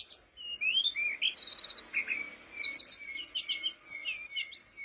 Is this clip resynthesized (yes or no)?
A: no